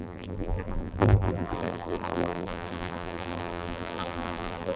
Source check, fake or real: fake